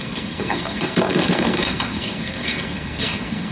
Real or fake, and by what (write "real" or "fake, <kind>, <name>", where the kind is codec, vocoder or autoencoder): fake, codec, SNAC